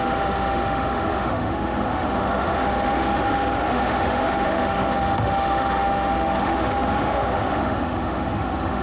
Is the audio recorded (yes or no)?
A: no